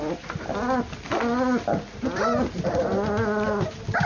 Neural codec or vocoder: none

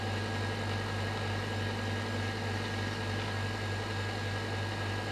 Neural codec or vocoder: none